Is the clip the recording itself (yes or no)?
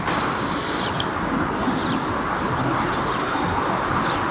yes